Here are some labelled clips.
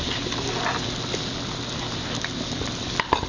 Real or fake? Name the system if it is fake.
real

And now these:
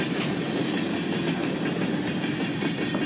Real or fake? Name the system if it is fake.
real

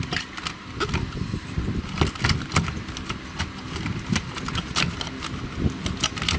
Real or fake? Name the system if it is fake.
real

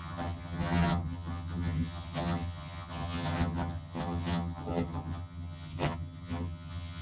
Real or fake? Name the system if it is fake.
fake, vocoder, HiFi-GAN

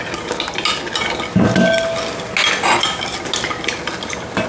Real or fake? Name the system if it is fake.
real